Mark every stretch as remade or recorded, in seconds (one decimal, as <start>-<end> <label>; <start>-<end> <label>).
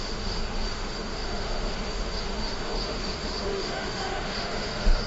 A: 0.0-5.1 remade